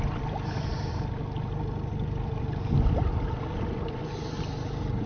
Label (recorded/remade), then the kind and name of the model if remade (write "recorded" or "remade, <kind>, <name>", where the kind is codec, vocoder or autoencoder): recorded